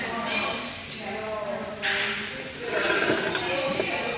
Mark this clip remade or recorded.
recorded